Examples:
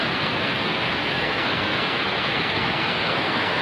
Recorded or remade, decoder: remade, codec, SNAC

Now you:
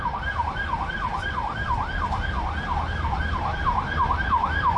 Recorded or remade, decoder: recorded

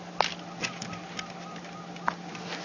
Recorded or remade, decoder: recorded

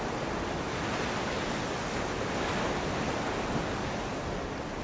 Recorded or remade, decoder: recorded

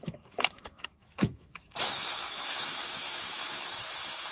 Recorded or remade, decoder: remade, autoencoder, DAC-VAE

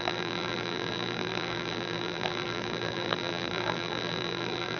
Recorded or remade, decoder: remade, vocoder, BigVGAN v2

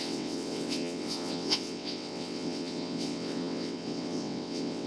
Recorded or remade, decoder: remade, vocoder, WaveNeXt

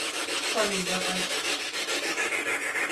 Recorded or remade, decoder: remade, autoencoder, DAC-VAE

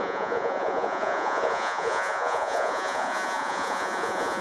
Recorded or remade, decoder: remade, vocoder, Vocos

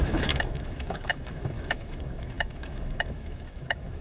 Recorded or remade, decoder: remade, autoencoder, DAC-VAE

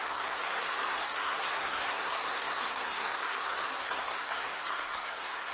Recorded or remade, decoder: remade, codec, SNAC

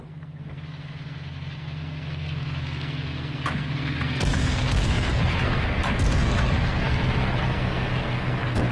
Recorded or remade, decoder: remade, codec, SNAC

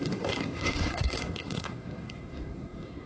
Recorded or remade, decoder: remade, codec, SNAC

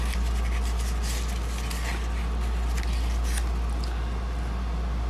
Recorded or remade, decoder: recorded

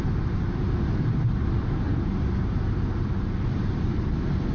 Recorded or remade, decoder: recorded